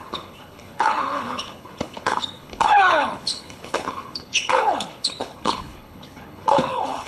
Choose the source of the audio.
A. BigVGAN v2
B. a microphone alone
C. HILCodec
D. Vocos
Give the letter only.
C